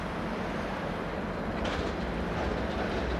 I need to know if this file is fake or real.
real